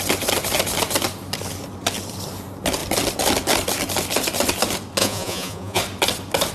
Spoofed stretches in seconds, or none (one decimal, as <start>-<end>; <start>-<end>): 5.0-5.8

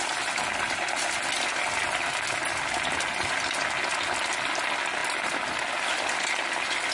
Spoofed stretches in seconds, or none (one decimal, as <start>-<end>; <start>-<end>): none

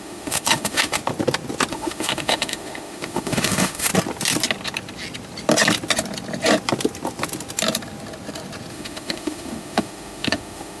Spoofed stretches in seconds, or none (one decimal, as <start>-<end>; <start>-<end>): 0.0-1.0; 1.7-3.9; 8.7-10.8

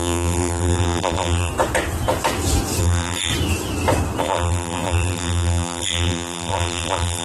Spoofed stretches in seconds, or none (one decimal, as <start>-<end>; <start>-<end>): 0.0-1.5; 2.8-3.3; 4.2-7.2

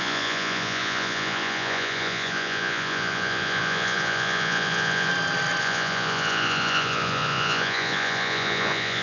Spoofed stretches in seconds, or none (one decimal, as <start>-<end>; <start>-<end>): 0.0-5.1; 5.6-9.0